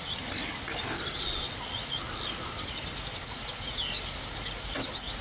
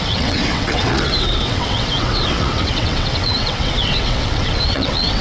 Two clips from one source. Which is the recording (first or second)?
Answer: first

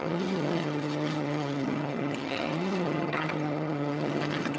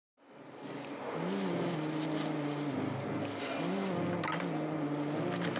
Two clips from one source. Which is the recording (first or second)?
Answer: second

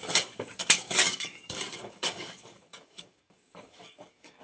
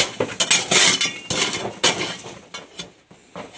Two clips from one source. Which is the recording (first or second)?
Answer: second